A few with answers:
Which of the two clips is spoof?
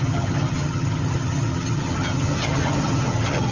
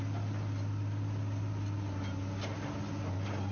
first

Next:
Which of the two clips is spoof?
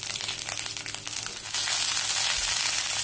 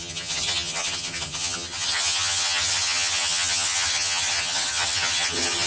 second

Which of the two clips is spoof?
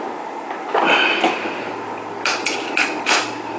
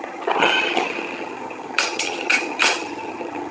second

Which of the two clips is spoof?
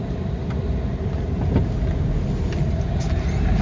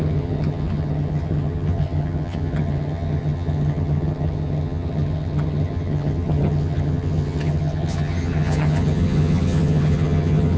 second